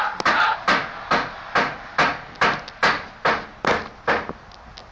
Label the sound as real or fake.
real